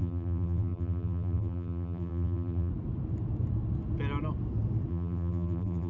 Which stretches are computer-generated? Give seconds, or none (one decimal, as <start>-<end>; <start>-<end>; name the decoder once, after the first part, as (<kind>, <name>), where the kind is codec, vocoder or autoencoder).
0.0-2.7 (vocoder, BigVGAN v2); 4.9-5.9